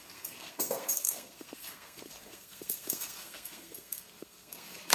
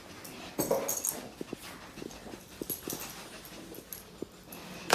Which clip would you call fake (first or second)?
first